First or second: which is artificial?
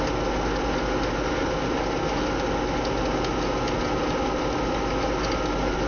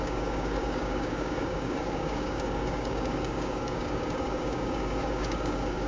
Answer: second